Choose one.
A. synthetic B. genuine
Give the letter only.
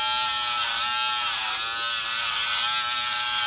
B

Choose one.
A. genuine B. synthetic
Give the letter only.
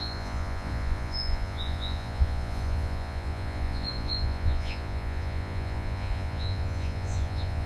B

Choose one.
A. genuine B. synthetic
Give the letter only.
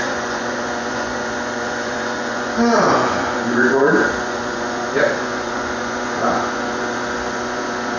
B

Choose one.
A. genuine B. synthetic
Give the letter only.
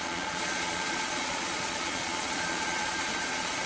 B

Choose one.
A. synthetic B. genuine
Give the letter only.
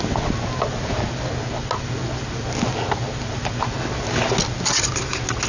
B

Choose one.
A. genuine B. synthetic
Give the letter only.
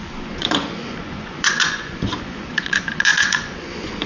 B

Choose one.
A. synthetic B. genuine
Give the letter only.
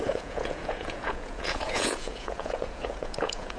A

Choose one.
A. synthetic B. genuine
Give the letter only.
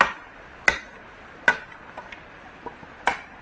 B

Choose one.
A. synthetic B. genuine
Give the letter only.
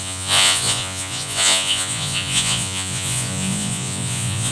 A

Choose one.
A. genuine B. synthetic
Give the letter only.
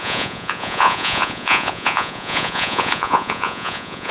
B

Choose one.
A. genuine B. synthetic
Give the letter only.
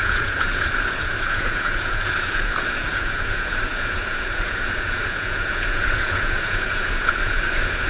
B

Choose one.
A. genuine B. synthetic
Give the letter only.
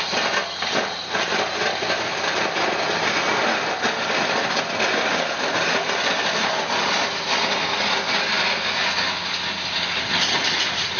A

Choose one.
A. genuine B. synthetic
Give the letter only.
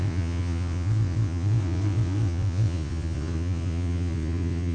B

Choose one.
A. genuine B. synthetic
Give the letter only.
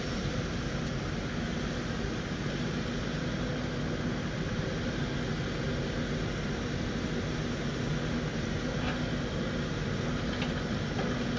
A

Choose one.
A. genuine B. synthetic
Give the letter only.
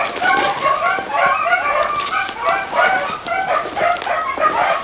A